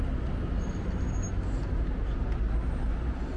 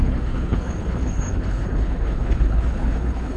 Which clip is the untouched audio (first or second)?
first